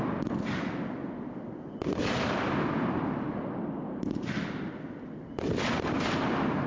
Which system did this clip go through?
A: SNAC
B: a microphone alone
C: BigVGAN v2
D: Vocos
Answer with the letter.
B